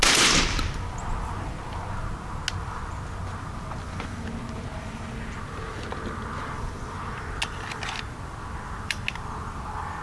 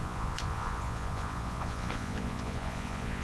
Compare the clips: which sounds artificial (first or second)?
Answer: second